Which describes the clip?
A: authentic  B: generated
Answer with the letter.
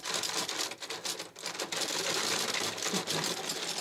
A